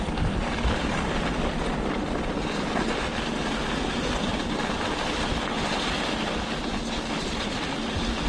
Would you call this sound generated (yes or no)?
no